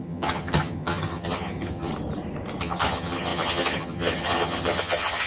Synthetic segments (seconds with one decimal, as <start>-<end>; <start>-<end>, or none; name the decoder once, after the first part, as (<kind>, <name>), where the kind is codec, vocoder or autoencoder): 0.0-1.9 (vocoder, HiFi-GAN); 2.6-5.3